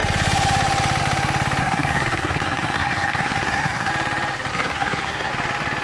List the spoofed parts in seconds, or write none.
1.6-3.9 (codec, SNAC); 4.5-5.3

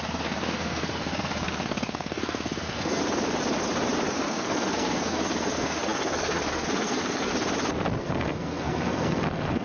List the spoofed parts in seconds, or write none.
0.0-3.0 (codec, SNAC); 4.1-7.3; 8.0-9.6

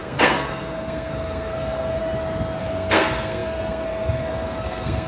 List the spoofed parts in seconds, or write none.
0.0-2.0 (codec, SNAC); 2.6-5.1